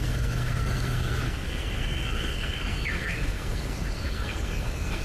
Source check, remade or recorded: remade